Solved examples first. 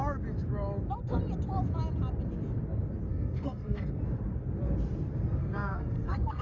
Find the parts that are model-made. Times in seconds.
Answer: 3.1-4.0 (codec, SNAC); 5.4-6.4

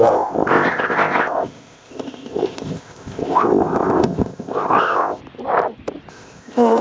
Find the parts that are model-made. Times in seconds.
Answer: 0.0-5.2 (codec, ZipCodec); 6.1-6.8

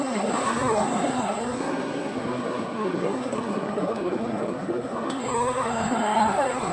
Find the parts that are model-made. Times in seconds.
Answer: 0.0-6.7 (codec, SNAC)

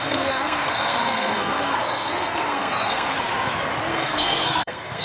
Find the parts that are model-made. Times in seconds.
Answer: 0.0-3.1 (codec, SNAC); 3.9-5.0

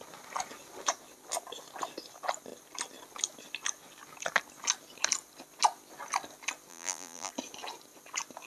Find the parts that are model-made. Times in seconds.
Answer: 6.7-7.3 (vocoder, BigVGAN v2)

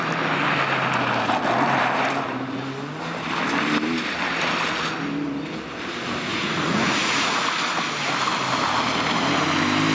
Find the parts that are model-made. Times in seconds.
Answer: 6.3-7.4 (vocoder, Vocos)